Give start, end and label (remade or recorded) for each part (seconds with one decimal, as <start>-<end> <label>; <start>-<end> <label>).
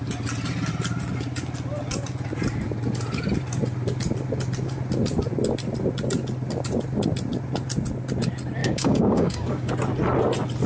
0.0-8.6 recorded; 8.6-9.7 remade; 9.7-10.7 recorded